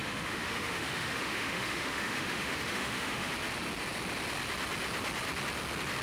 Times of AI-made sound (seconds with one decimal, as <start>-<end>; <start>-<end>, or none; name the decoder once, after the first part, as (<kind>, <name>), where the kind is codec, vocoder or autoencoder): 0.0-3.3 (autoencoder, DAC-VAE)